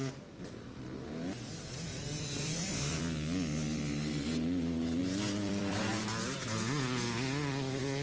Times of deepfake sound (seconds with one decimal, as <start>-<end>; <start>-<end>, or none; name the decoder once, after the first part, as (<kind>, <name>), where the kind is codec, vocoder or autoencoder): 1.9-3.0 (vocoder, BigVGAN v2); 5.0-5.9